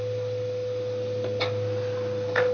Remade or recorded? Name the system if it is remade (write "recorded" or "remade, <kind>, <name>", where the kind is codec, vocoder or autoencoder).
recorded